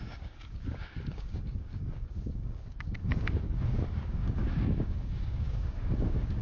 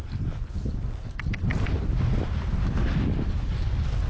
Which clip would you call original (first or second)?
second